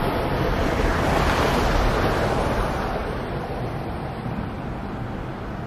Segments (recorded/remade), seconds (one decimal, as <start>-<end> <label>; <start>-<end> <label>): 0.0-5.7 recorded